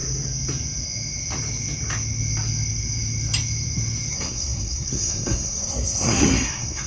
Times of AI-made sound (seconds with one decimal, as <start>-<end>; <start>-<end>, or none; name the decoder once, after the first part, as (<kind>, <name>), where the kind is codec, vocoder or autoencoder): 4.1-6.9 (codec, SNAC)